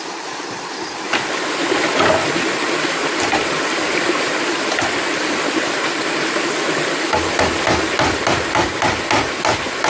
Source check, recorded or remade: recorded